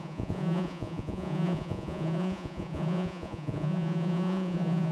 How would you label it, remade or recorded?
remade